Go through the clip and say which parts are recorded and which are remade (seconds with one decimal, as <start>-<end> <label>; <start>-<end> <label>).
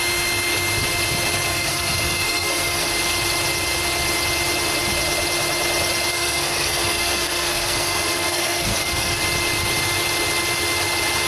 0.0-1.5 recorded; 1.5-2.9 remade; 2.9-6.1 recorded; 6.1-9.2 remade; 9.2-11.3 recorded